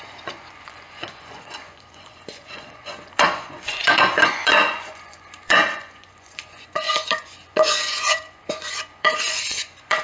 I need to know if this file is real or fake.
fake